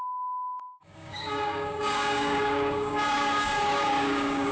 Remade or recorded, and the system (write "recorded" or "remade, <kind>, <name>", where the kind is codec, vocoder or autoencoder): remade, codec, DAC